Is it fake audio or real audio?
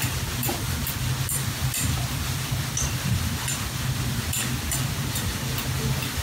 real